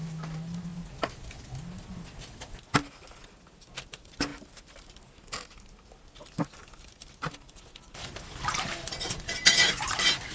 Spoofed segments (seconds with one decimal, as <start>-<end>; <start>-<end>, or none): none